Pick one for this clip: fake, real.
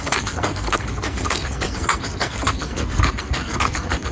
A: fake